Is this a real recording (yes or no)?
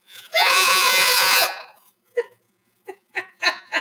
no